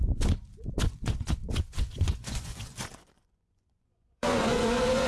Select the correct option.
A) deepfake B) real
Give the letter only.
A